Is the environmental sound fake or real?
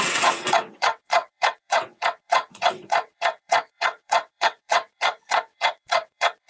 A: fake